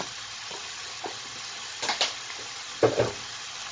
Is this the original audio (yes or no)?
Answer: yes